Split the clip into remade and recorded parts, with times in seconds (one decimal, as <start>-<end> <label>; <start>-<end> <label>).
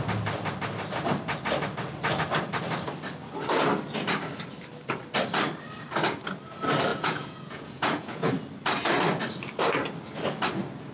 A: 0.0-6.9 recorded; 6.9-8.3 remade; 8.3-10.9 recorded